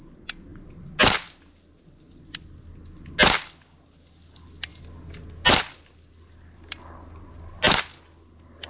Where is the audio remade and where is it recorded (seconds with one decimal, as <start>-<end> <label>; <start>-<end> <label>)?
0.0-8.7 recorded